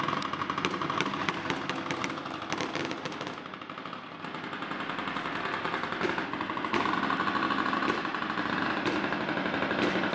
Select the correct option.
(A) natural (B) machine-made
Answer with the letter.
A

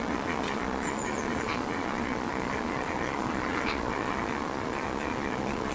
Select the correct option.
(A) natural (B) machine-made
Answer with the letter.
B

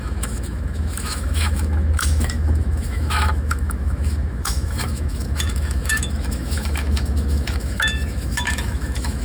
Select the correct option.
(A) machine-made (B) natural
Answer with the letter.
A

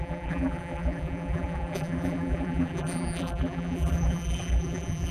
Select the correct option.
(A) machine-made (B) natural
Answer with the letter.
A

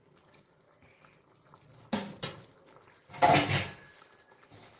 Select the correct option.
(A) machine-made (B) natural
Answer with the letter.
B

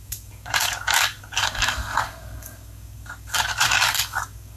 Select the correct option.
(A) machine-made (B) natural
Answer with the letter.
A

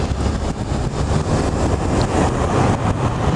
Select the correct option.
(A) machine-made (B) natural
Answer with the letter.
B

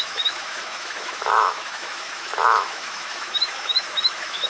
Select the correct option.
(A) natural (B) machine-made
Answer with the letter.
B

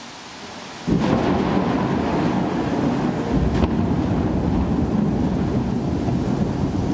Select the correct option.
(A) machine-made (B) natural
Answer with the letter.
B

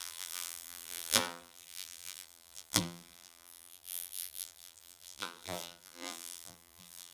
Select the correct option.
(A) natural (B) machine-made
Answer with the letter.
B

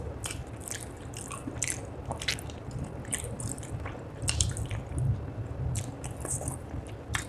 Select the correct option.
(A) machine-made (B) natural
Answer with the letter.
B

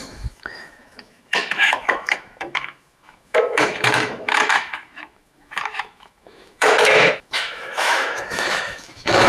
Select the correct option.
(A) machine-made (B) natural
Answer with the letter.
A